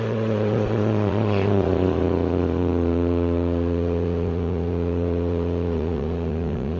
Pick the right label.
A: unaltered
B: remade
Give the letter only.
B